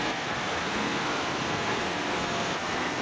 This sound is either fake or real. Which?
fake